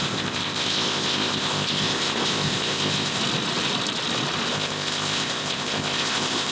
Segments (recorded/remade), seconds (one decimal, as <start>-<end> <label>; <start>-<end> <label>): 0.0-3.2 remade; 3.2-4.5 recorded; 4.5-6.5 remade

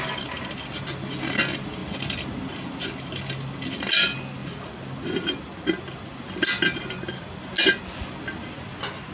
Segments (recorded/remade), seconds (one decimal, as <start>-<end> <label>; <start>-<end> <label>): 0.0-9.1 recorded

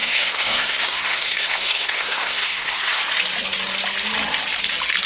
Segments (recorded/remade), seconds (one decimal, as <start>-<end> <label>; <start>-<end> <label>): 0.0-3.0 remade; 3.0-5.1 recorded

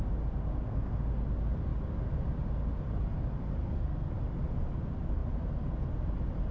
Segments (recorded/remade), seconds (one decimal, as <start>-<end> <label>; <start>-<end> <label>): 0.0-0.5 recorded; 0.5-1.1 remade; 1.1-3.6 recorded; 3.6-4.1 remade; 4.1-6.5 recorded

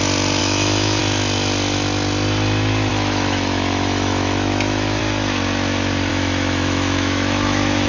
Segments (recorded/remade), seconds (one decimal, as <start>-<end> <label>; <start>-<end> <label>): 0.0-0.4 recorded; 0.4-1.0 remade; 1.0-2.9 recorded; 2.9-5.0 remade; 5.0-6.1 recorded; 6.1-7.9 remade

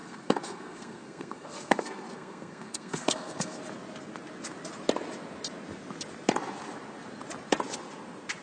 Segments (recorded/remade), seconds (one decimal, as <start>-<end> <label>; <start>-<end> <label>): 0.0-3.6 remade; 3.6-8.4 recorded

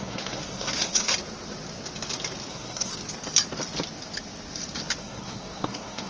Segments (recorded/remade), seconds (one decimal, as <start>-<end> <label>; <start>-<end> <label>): 0.0-1.1 remade; 1.1-2.5 recorded; 2.5-2.9 remade; 2.9-5.0 recorded; 5.0-6.1 remade